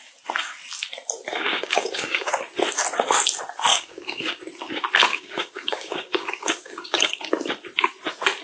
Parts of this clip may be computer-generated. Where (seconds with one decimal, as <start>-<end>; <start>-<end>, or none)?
1.3-2.3; 3.7-4.4; 5.1-7.3

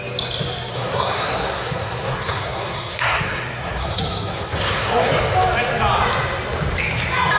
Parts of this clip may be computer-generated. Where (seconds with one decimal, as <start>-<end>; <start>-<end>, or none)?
0.7-5.1